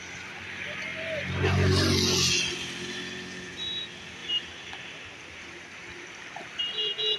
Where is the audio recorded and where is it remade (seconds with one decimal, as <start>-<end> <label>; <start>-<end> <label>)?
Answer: 0.0-7.2 recorded